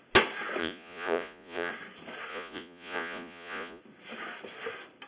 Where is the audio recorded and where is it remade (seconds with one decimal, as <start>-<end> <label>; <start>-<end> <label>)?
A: 0.0-0.6 recorded; 0.6-1.7 remade; 1.7-2.3 recorded; 2.3-3.8 remade; 3.8-5.1 recorded